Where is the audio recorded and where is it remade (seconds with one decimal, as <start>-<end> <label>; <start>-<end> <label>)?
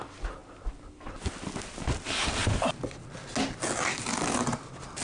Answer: 0.0-5.0 recorded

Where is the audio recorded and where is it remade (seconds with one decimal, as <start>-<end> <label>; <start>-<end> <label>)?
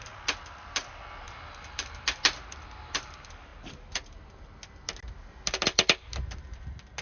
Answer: 0.0-7.0 recorded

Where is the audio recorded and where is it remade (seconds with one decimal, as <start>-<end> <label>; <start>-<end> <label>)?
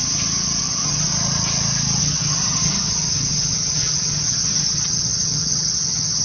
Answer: 0.0-0.6 recorded; 0.6-1.1 remade; 1.1-2.0 recorded; 2.0-6.2 remade